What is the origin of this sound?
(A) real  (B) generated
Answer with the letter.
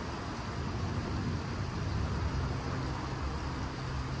A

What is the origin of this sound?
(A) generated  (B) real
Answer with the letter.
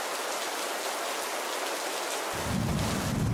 B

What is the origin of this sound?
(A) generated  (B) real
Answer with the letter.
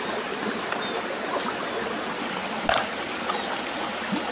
B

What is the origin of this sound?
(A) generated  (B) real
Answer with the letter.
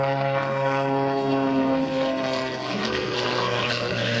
A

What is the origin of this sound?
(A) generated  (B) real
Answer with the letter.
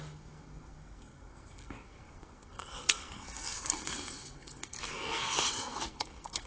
A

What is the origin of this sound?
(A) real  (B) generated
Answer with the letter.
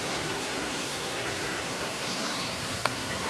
B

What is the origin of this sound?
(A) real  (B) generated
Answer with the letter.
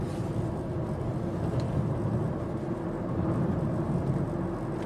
A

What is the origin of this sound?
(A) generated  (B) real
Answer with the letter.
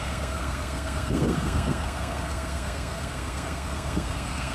A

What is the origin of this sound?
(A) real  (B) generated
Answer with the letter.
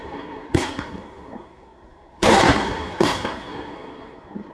B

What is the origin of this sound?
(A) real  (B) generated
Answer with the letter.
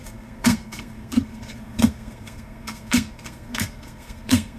B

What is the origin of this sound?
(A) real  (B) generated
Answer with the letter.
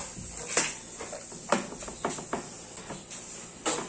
A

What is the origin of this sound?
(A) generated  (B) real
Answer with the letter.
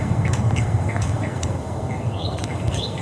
A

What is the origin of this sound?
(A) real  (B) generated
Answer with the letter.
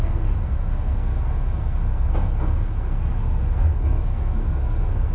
B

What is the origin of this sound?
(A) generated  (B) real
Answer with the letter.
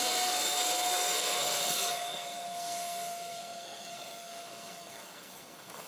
A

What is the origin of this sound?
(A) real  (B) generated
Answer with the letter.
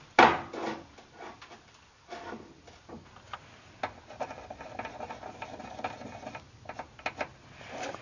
A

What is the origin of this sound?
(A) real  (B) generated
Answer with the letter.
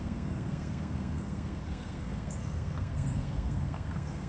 B